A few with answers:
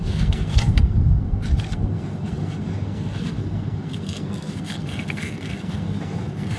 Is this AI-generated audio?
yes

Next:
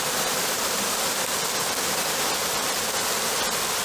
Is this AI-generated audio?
no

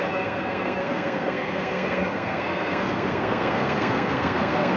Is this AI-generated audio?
yes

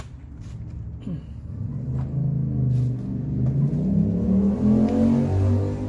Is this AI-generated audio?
no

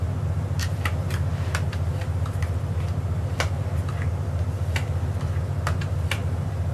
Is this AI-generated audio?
no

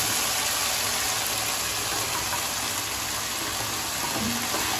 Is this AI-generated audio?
no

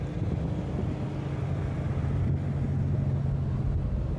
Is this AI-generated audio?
no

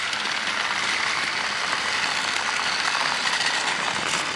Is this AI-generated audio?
no